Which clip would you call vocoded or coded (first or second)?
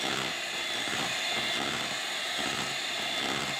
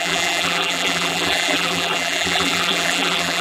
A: second